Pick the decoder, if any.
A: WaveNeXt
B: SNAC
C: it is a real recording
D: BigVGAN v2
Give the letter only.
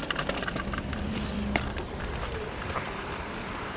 D